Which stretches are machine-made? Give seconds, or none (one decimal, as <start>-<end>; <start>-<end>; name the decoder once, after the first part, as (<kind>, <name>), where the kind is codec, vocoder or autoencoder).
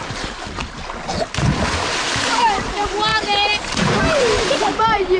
0.0-0.6 (vocoder, BigVGAN v2); 2.0-5.2